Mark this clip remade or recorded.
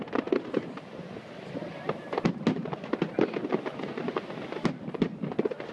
recorded